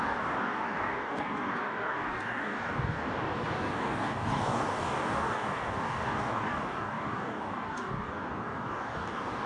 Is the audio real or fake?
fake